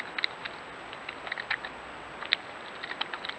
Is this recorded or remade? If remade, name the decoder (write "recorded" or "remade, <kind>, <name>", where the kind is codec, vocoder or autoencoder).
recorded